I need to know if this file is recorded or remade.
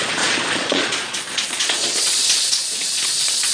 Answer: remade